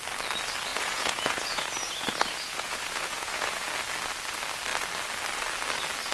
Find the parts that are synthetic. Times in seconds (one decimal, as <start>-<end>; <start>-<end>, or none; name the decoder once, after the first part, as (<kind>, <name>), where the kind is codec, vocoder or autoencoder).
0.7-3.7 (vocoder, Vocos)